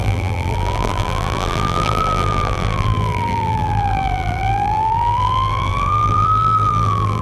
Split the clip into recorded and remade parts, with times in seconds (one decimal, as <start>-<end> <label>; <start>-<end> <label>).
0.0-7.2 remade